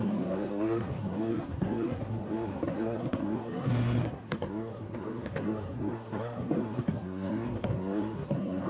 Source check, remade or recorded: remade